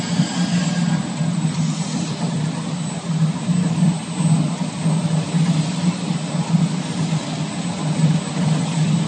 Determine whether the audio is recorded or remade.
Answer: recorded